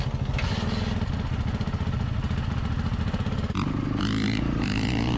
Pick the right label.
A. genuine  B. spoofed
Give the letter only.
A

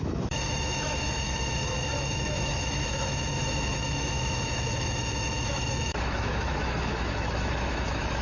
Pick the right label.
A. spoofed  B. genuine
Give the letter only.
A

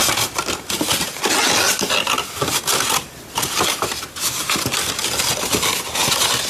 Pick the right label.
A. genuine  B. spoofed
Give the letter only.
A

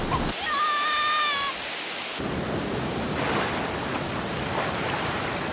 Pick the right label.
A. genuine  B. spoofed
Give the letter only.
A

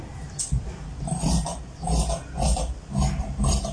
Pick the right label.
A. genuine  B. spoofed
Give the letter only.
A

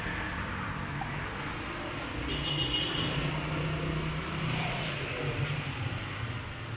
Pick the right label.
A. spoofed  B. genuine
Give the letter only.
B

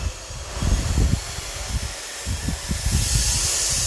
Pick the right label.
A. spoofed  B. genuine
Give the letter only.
B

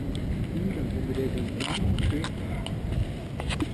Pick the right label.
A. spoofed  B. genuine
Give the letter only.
B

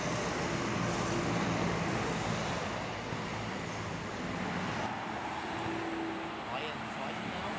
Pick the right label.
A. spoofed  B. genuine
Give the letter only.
B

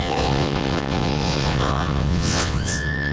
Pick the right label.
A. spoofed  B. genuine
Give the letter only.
A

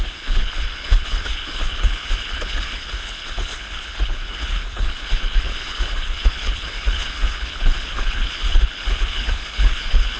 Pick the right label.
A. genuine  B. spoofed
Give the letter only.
B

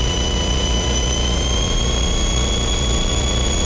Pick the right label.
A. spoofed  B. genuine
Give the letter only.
A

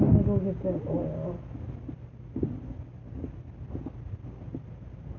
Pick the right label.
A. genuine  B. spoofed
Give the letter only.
A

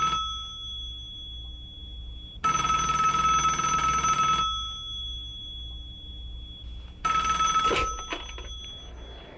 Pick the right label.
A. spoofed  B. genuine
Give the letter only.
B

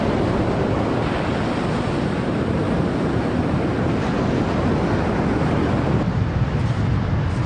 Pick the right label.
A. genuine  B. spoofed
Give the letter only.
A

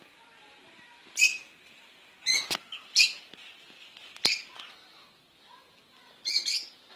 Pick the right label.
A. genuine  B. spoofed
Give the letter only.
A